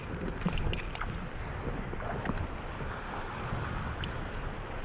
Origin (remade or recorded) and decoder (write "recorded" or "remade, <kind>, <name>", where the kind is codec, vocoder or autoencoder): recorded